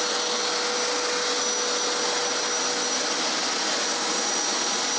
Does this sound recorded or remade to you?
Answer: recorded